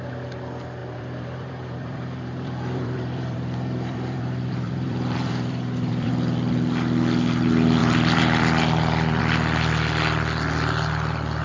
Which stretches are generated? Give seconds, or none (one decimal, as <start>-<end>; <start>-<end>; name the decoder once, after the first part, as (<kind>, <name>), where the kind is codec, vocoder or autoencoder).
0.8-6.1 (vocoder, BigVGAN v2); 7.8-9.2